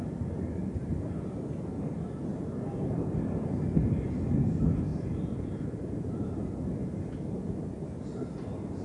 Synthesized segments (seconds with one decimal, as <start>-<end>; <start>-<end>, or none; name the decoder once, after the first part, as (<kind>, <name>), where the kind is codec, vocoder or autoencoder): none